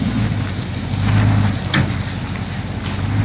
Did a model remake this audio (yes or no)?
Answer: no